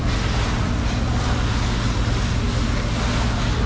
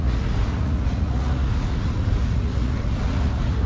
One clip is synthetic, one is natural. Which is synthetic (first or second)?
second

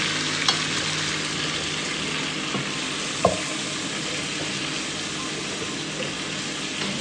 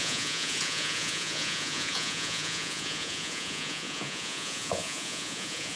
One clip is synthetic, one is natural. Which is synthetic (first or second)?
second